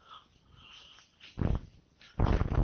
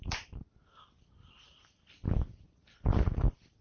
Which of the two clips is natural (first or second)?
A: first